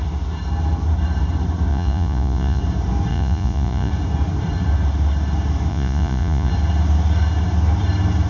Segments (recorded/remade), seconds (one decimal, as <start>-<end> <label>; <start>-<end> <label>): 0.0-1.7 recorded; 1.7-2.6 remade; 2.6-3.1 recorded; 3.1-3.9 remade; 3.9-5.7 recorded; 5.7-6.5 remade; 6.5-8.3 recorded